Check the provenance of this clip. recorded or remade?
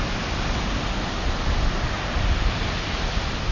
recorded